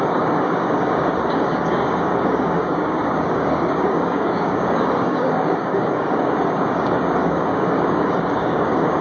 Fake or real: fake